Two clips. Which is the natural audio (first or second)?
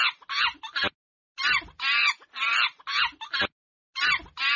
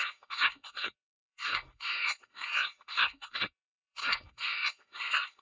first